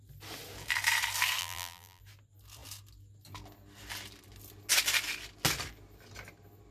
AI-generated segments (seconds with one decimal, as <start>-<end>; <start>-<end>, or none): 1.4-2.0